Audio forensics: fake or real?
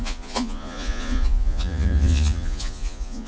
fake